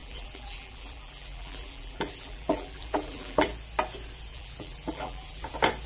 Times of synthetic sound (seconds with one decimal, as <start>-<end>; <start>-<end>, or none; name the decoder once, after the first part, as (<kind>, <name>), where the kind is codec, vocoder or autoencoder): 0.0-3.5 (vocoder, BigVGAN v2); 4.3-5.4